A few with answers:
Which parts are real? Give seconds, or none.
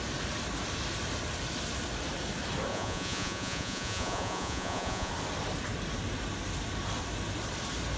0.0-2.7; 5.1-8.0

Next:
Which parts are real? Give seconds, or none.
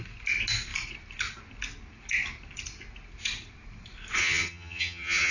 0.0-4.2